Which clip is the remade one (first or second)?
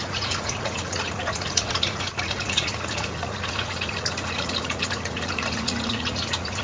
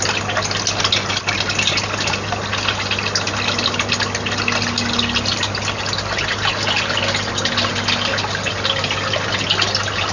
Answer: first